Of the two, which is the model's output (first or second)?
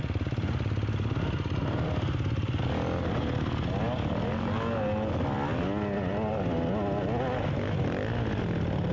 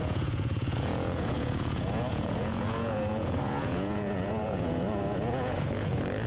second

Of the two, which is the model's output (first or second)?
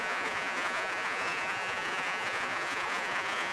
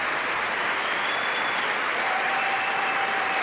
first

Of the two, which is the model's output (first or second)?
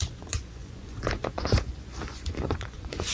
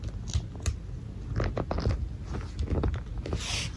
first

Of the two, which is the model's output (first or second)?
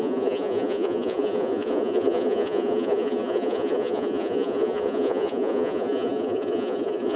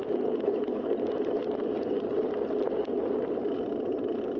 first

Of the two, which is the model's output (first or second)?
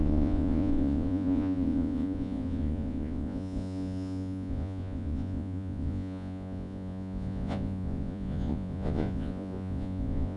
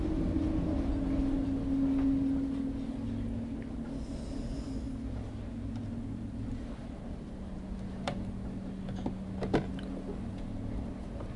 first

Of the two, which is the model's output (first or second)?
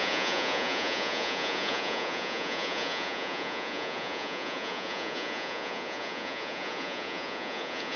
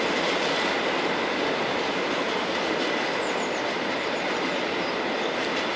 first